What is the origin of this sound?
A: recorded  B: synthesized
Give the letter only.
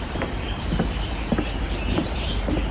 A